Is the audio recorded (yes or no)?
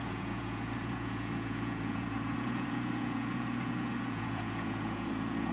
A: no